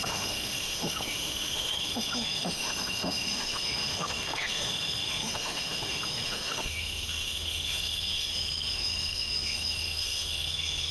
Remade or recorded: remade